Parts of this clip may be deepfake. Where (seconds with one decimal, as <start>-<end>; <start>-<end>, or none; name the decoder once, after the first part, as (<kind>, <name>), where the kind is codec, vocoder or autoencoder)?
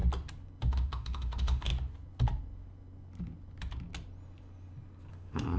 0.6-1.7 (autoencoder, DAC-VAE); 5.1-5.6